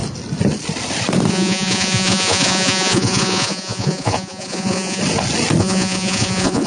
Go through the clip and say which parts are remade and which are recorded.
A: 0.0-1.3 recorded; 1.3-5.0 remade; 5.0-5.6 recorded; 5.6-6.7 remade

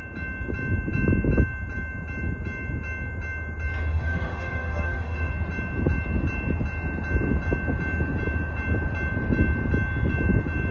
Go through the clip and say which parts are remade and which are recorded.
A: 0.0-3.9 recorded; 3.9-5.3 remade; 5.3-10.7 recorded

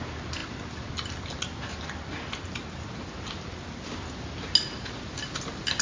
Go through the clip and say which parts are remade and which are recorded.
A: 0.0-5.8 recorded

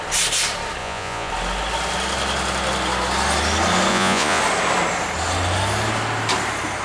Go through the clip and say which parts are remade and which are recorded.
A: 0.0-0.8 recorded; 0.8-1.3 remade; 1.3-3.9 recorded; 3.9-4.4 remade; 4.4-6.8 recorded

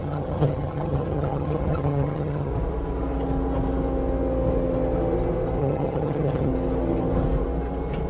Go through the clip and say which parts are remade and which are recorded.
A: 0.0-2.5 remade; 2.5-5.6 recorded; 5.6-6.5 remade; 6.5-8.1 recorded

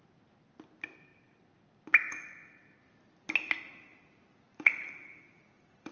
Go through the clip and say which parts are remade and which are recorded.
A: 0.0-4.5 recorded; 4.5-5.9 remade

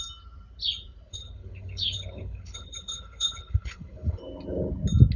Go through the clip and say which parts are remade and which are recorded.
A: 0.0-1.1 recorded; 1.1-4.2 remade; 4.2-5.2 recorded